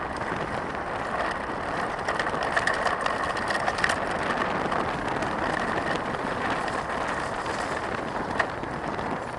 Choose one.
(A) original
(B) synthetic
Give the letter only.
A